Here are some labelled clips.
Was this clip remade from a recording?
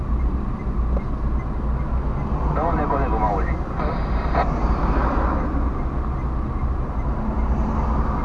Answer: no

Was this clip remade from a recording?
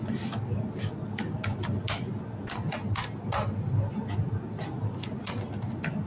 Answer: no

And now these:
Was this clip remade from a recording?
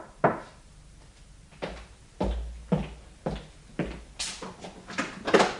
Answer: no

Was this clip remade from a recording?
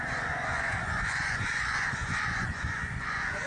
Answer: yes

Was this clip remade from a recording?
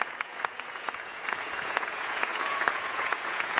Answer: yes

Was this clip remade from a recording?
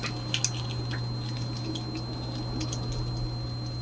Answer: no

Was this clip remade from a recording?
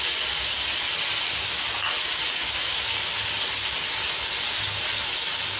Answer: no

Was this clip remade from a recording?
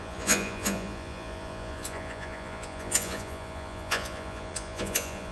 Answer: yes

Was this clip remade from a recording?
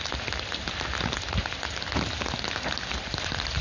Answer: no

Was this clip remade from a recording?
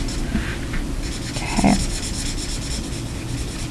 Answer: no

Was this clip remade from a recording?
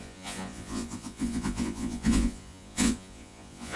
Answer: yes